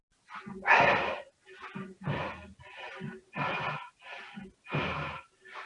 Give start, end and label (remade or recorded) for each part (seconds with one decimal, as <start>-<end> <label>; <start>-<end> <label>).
0.0-5.7 recorded